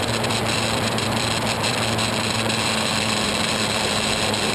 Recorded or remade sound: remade